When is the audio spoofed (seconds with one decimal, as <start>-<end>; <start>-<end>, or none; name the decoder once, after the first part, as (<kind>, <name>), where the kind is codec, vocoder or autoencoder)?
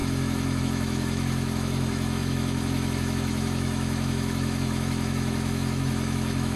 0.0-6.6 (autoencoder, DAC-VAE)